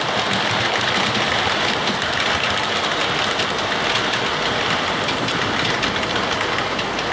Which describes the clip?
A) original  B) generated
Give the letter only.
A